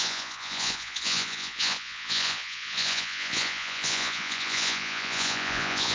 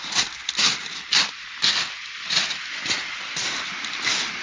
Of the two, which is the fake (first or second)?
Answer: first